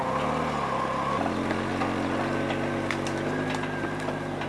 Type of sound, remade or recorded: recorded